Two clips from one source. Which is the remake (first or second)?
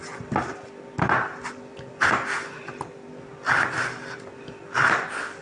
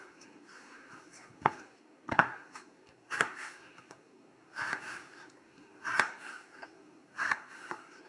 second